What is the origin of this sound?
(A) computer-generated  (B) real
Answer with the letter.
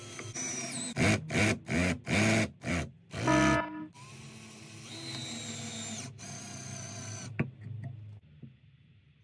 B